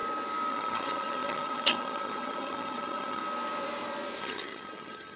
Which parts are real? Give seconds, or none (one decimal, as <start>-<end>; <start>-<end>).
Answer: 0.0-0.5; 3.2-4.2